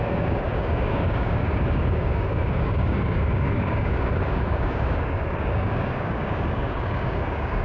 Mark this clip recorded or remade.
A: remade